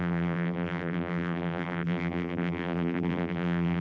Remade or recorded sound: remade